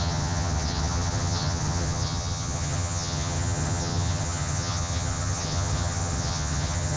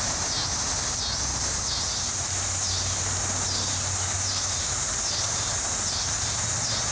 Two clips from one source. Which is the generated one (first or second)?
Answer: first